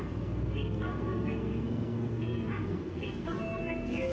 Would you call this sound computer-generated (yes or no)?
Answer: yes